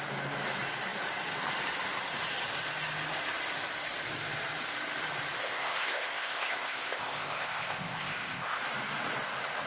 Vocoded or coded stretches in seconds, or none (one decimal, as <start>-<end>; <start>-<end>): 5.4-8.6